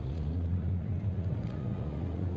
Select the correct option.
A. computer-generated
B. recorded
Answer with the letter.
A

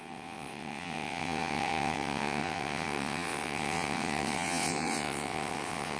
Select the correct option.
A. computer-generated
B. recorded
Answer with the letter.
A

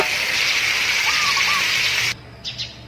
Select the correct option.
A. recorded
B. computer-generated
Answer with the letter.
A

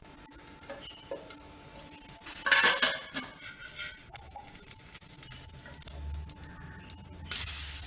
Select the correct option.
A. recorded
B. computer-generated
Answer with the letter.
A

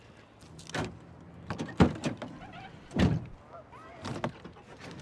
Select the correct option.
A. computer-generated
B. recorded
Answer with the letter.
B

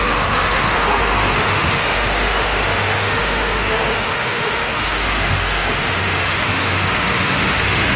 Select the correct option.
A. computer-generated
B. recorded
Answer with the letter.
A